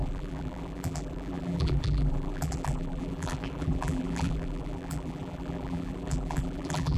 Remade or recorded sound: remade